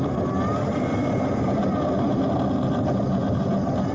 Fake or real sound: real